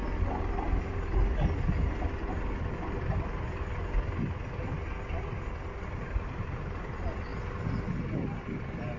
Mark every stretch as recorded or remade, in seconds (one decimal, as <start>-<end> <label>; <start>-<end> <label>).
0.0-9.0 recorded